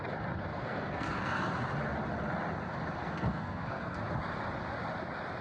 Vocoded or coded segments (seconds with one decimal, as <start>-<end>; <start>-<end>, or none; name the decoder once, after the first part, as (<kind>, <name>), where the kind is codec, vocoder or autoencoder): 0.5-1.5 (codec, SNAC); 3.0-4.0